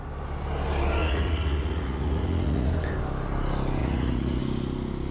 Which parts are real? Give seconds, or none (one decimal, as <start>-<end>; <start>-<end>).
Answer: 0.0-1.0; 2.7-3.8; 4.4-5.1

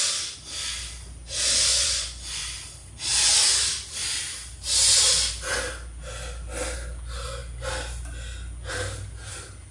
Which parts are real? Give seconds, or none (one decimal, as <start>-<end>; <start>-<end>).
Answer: 0.0-1.7; 2.4-9.7

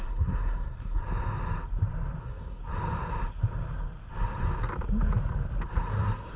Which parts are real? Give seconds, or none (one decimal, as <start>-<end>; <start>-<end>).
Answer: 1.0-2.2; 2.6-5.9

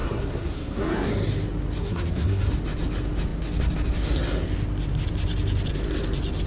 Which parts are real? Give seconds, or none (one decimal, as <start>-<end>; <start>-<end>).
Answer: 1.1-1.8; 2.5-6.5

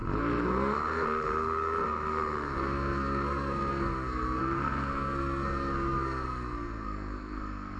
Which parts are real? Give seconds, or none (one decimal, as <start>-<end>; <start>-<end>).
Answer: none

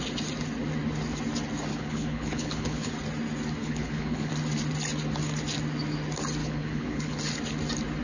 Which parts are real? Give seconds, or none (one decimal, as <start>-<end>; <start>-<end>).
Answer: 0.0-1.7; 2.9-3.6; 4.3-6.4; 7.2-8.0